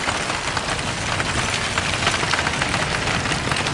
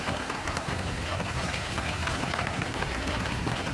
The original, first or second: first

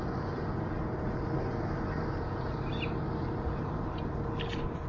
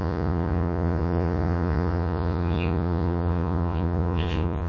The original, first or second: first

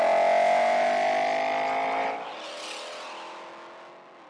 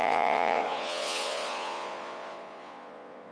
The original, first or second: first